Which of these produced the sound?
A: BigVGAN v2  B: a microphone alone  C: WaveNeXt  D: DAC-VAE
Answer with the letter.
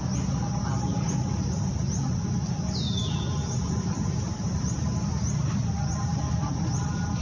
B